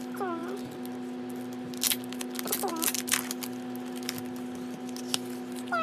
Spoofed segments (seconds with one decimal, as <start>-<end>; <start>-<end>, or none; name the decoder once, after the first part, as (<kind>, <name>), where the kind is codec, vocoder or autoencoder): none